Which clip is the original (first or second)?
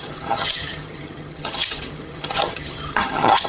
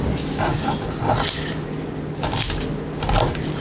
second